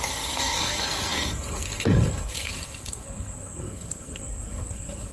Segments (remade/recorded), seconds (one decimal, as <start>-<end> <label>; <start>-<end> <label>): 0.0-5.1 remade